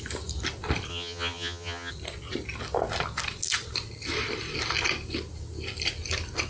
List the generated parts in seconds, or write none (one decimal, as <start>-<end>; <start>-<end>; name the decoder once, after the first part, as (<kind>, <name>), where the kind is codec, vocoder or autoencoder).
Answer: 0.9-1.9 (vocoder, HiFi-GAN)